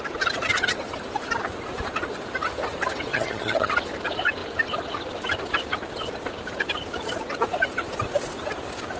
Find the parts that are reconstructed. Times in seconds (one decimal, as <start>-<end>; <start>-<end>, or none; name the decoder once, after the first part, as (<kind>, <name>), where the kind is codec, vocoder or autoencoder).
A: 3.1-3.7 (vocoder, HiFi-GAN)